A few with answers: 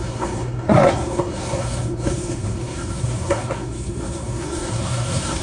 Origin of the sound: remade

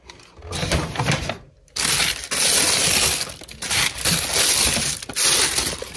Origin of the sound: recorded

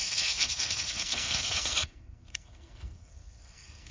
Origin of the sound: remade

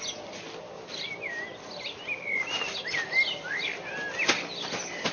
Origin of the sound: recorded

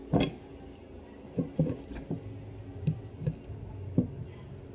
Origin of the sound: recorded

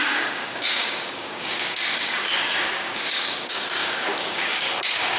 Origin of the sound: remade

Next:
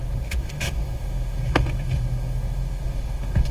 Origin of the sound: remade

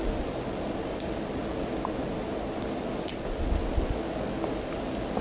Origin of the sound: recorded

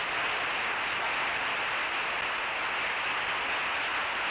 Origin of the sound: recorded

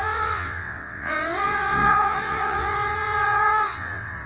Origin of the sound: remade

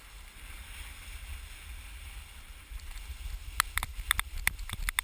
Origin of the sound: recorded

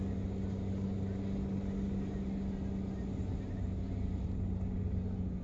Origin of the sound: recorded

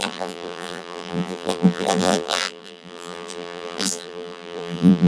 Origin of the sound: remade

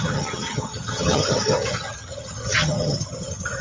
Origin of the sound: remade